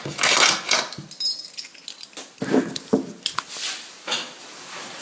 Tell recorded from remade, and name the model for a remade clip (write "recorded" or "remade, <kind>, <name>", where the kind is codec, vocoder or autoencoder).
recorded